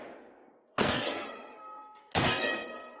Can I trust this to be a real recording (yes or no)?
no